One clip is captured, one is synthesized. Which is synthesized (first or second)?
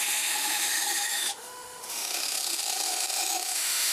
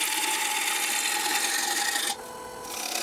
first